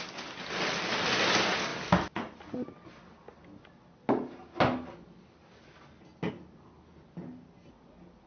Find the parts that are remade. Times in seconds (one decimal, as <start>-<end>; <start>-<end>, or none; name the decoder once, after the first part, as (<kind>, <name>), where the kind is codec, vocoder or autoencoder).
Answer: none